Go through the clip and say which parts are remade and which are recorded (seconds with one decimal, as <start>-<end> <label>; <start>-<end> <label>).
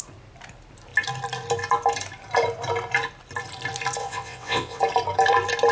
0.0-4.0 recorded; 4.0-4.8 remade; 4.8-5.7 recorded